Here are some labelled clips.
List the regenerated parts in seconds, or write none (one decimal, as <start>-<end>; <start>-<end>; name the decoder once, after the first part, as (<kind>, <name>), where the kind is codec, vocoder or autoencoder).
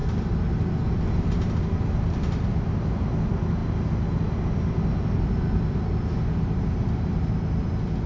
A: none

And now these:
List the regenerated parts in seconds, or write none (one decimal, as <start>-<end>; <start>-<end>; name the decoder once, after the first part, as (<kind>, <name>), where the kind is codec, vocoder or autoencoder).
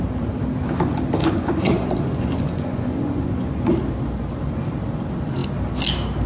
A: 1.2-3.7 (vocoder, Vocos)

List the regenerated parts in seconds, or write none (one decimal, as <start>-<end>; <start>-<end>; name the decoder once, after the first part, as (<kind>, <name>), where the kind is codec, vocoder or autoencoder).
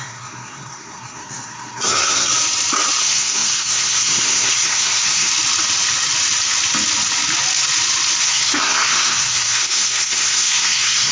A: 0.0-2.3 (codec, SNAC); 3.0-5.3; 8.2-11.1